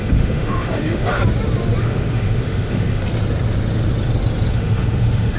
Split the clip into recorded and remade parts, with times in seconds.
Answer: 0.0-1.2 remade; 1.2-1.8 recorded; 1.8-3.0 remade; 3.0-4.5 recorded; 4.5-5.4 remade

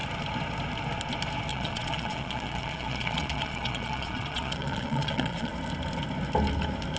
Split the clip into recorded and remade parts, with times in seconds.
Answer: 0.0-1.5 recorded; 1.5-5.5 remade; 5.5-7.0 recorded

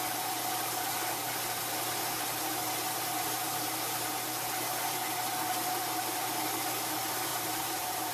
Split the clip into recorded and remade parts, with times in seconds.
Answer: 0.0-7.3 recorded; 7.3-8.1 remade

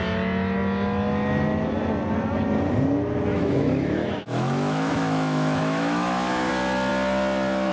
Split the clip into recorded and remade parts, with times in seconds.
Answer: 0.0-3.3 recorded; 3.3-6.5 remade; 6.5-7.7 recorded